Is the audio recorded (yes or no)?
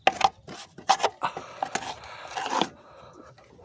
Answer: yes